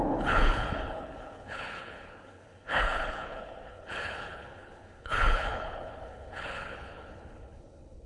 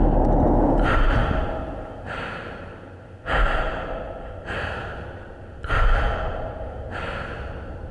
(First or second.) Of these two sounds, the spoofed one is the first